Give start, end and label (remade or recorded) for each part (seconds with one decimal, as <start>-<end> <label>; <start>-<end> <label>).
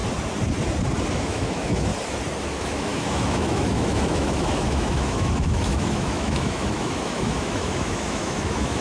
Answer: 0.0-1.1 recorded; 1.1-1.9 remade; 1.9-2.4 recorded; 2.4-8.8 remade